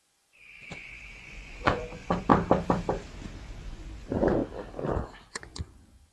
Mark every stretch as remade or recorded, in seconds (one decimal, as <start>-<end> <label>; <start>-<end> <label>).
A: 0.0-2.3 remade; 2.3-3.4 recorded; 3.4-4.4 remade; 4.4-5.3 recorded; 5.3-6.1 remade